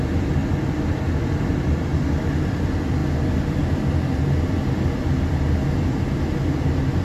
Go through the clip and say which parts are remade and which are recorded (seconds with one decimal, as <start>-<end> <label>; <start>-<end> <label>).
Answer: 0.0-7.0 recorded